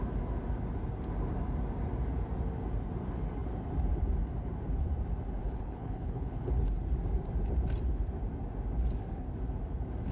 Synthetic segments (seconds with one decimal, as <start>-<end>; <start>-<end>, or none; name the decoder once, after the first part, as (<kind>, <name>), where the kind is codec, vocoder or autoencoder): 5.4-6.5 (codec, HILCodec)